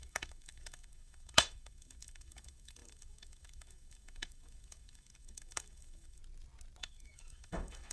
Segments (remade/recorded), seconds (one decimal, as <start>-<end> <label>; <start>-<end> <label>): 0.0-6.2 remade; 6.2-6.8 recorded; 6.8-7.9 remade